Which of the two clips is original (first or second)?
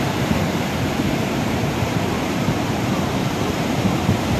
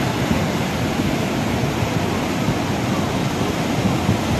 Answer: second